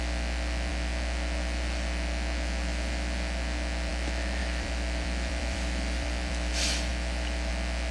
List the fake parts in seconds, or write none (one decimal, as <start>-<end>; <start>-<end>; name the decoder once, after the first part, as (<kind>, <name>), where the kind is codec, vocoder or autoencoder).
4.4-6.5 (vocoder, BigVGAN v2); 6.9-7.5